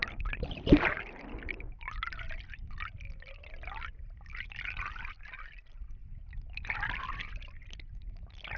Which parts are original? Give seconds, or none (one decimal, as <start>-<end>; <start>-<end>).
0.0-8.6